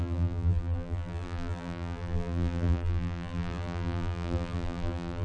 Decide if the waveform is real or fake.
fake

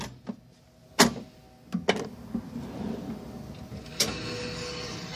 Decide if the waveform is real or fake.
real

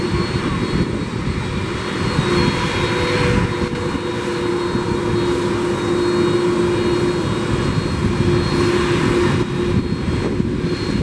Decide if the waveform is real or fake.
real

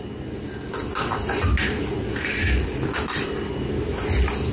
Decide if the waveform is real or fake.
real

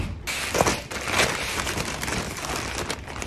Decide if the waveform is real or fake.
real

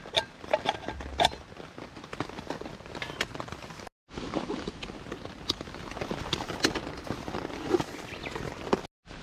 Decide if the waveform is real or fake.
real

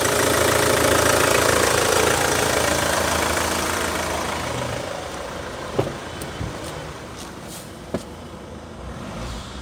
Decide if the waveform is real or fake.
fake